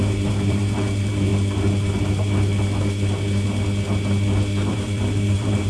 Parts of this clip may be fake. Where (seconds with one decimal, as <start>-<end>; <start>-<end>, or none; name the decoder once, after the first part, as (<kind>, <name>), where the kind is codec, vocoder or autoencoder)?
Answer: 0.0-1.3 (vocoder, BigVGAN v2); 4.7-5.7